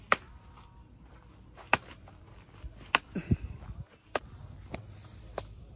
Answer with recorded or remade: remade